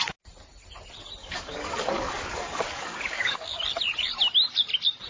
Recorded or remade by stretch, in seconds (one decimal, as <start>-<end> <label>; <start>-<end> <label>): 0.0-1.2 recorded; 1.2-3.6 remade; 3.6-5.1 recorded